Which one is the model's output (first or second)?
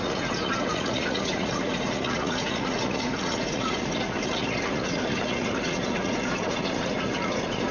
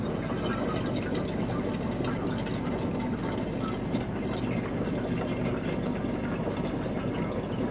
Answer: first